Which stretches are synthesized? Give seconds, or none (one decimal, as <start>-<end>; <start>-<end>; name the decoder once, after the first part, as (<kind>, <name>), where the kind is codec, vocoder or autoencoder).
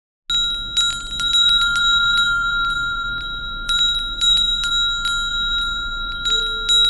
1.0-4.7 (vocoder, BigVGAN v2); 5.3-6.4